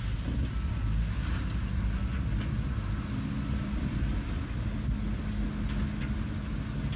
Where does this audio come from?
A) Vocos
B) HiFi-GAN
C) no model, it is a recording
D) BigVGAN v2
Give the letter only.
C